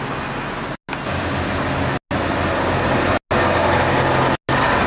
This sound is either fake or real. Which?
real